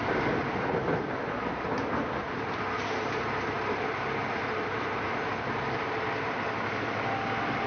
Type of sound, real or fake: real